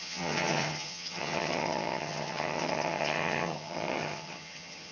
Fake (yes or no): yes